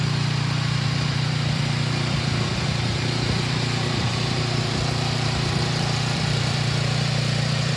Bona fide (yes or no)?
no